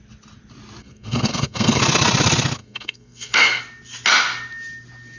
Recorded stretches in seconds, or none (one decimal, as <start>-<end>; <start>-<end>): 0.0-0.8; 1.8-2.6; 3.6-5.2